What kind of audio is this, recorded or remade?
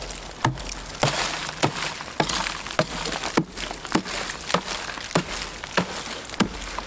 recorded